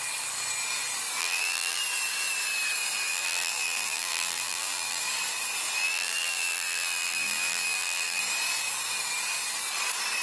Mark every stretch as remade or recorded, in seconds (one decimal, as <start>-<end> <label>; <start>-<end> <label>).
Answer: 0.0-1.2 recorded; 1.2-1.8 remade; 1.8-3.1 recorded; 3.1-5.0 remade; 5.0-5.8 recorded; 5.8-8.2 remade; 8.2-10.2 recorded